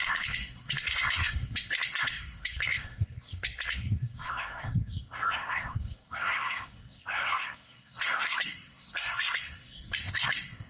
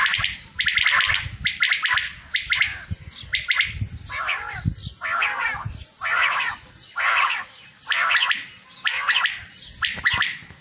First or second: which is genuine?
second